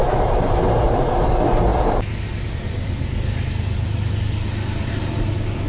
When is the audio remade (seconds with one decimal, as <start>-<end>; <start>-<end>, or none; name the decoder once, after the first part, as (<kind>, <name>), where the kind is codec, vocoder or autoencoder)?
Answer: none